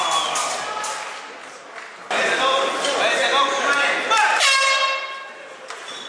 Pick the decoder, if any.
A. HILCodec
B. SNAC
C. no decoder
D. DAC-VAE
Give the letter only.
C